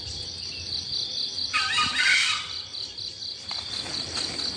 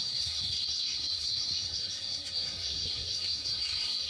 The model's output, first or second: second